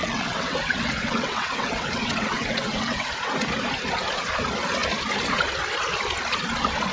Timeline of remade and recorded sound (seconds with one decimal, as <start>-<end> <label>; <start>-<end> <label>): 0.0-3.1 remade; 3.1-6.9 recorded